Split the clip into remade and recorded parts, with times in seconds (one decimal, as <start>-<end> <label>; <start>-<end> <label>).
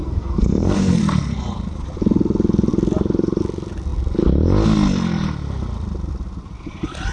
0.0-1.0 remade; 1.0-7.1 recorded